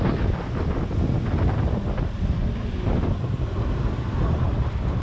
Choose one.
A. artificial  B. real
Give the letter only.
B